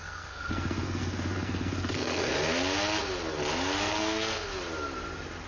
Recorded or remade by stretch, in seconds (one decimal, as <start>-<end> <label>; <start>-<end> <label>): 0.0-2.3 remade; 2.3-3.8 recorded; 3.8-4.5 remade; 4.5-5.5 recorded

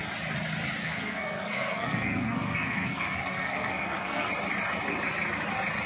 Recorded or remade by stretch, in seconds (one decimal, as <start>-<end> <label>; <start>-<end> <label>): 0.0-0.8 recorded; 0.8-4.3 remade; 4.3-5.9 recorded

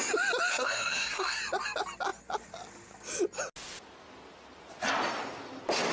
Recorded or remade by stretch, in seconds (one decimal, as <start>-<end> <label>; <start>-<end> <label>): 0.0-0.5 recorded; 0.5-1.4 remade; 1.4-5.9 recorded